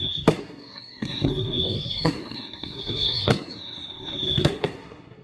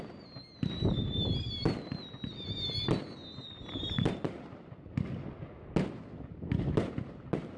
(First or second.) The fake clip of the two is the first